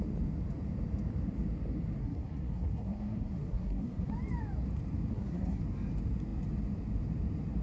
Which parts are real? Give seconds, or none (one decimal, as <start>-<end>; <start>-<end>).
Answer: 0.0-2.0; 4.1-5.1; 5.6-7.6